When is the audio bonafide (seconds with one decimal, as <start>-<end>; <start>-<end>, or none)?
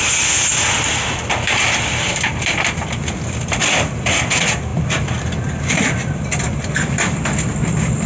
0.0-8.1